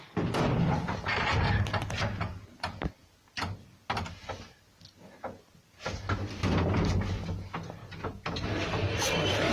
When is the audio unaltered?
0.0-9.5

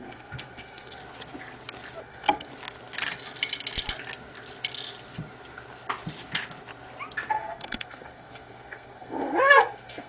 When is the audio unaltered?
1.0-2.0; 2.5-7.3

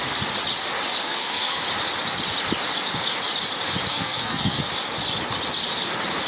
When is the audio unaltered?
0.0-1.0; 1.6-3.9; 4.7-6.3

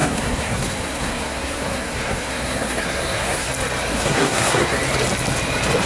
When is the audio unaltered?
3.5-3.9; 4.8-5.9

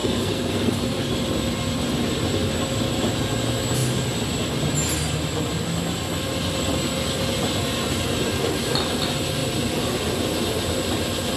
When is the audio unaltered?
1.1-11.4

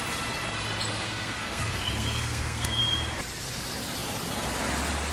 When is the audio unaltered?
0.0-0.9; 2.8-5.1

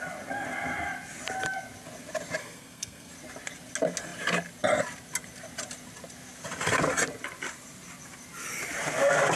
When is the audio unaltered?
0.0-2.4; 3.1-9.4